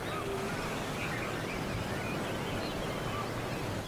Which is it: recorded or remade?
recorded